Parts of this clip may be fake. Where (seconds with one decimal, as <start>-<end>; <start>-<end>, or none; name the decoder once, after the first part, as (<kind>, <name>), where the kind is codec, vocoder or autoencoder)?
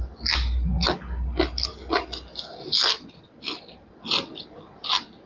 none